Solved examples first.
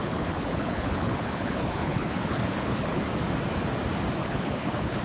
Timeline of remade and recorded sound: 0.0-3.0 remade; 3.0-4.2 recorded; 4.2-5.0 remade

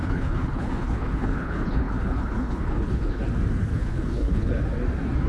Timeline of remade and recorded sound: 0.0-3.2 remade; 3.2-3.7 recorded; 3.7-4.5 remade; 4.5-5.3 recorded

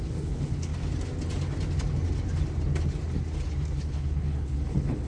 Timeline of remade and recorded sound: 0.0-0.7 remade; 0.7-3.8 recorded; 3.8-5.1 remade

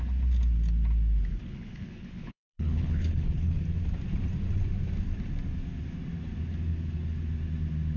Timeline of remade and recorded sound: 0.0-1.3 recorded; 1.3-3.6 remade; 3.6-8.0 recorded